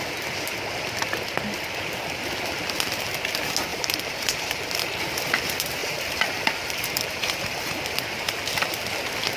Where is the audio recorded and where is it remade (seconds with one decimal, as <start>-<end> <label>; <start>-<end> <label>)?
0.0-3.7 recorded; 3.7-5.0 remade; 5.0-5.8 recorded; 5.8-7.8 remade; 7.8-9.4 recorded